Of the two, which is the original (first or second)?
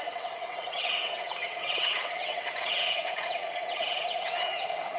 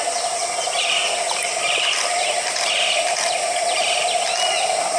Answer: second